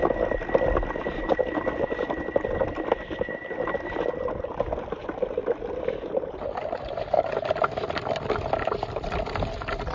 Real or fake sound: real